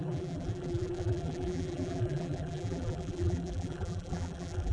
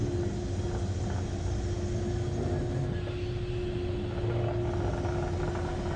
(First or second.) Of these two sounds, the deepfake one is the first